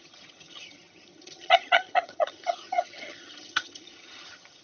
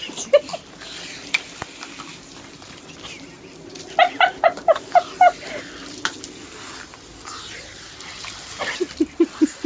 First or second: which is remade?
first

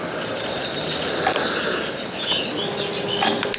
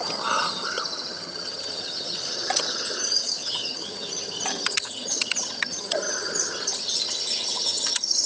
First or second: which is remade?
second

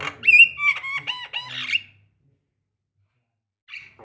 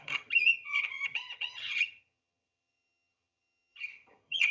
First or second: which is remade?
second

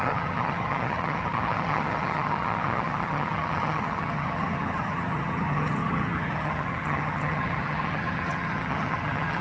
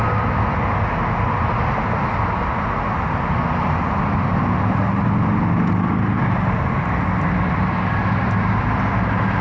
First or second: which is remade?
first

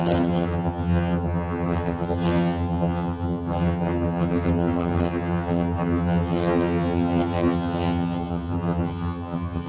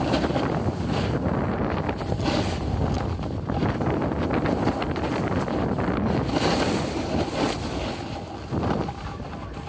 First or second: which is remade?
first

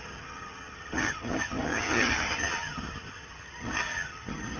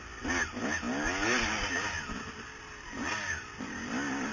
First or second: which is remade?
first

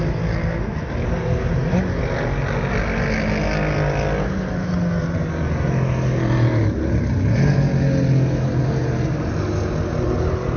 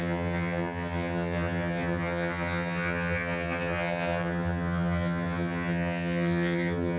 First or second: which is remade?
second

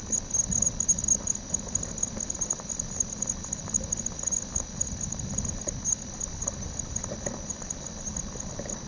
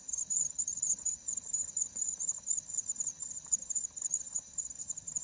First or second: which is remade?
second